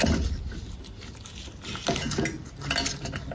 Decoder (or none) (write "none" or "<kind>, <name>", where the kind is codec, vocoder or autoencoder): none